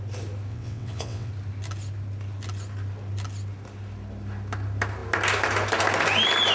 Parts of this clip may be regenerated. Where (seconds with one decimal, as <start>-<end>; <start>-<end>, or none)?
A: 0.5-1.3